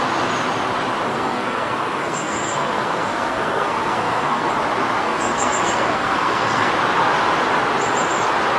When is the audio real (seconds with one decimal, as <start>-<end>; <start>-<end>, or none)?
0.0-1.1; 4.5-5.0; 6.7-8.6